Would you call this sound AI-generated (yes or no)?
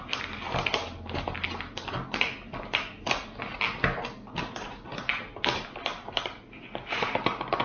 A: no